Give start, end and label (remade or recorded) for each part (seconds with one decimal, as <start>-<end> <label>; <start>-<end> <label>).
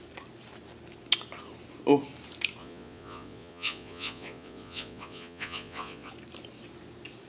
0.0-2.6 recorded; 2.6-6.1 remade; 6.1-7.3 recorded